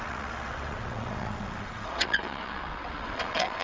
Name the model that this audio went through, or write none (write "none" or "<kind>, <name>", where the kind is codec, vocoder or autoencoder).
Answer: vocoder, WaveNeXt